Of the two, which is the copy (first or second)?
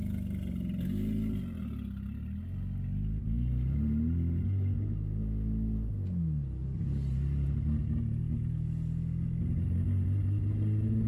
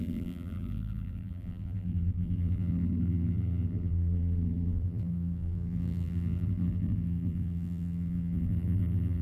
second